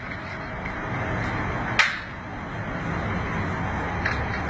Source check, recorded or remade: recorded